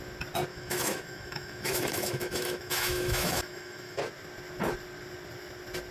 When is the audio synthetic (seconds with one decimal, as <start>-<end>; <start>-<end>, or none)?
0.5-4.0